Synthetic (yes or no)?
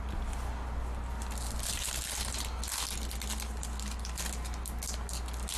no